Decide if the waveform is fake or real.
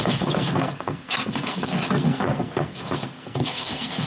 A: fake